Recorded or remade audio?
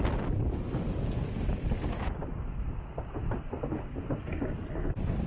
recorded